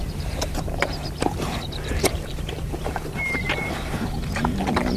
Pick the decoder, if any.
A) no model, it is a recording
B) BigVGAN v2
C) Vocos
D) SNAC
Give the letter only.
B